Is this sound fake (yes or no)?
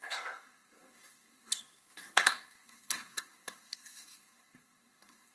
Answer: yes